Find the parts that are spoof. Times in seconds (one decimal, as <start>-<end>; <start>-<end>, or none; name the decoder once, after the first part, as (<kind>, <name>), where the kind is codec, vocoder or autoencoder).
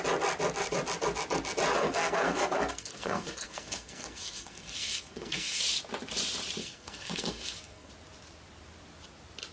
1.8-5.6 (codec, SNAC); 6.6-7.9